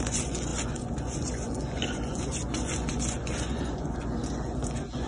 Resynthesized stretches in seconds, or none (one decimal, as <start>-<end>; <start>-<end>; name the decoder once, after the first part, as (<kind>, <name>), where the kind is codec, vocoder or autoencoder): 0.0-5.1 (vocoder, Vocos)